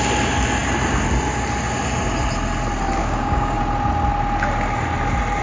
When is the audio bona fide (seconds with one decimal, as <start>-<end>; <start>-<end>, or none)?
0.0-3.0; 3.6-5.4